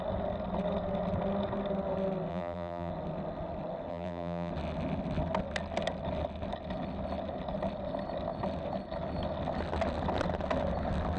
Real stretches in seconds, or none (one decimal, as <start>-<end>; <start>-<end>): 0.0-2.3; 2.9-3.9; 4.5-11.2